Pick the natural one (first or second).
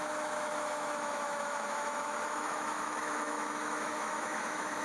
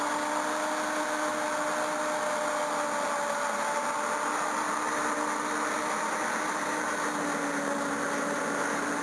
second